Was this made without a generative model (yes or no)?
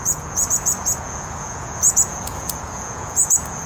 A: no